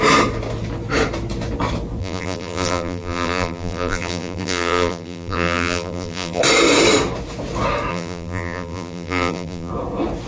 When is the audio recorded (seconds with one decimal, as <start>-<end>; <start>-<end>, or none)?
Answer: 0.0-2.0; 6.4-7.9; 9.7-10.3